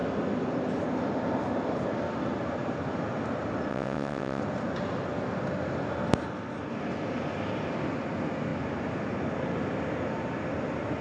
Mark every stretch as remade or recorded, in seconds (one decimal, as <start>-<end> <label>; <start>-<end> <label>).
0.0-3.7 recorded; 3.7-4.4 remade; 4.4-11.0 recorded